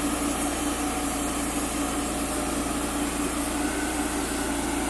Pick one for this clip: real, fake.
real